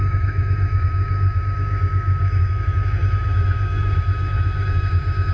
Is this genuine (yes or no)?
no